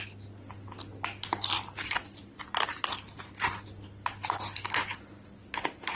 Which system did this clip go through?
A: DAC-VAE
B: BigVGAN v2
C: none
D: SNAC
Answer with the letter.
C